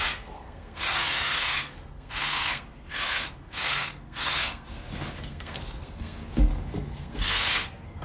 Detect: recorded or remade remade